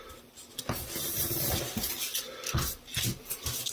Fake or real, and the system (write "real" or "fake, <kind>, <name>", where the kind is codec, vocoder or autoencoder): real